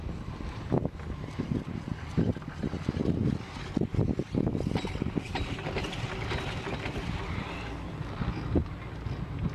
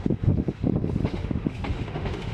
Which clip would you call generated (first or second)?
second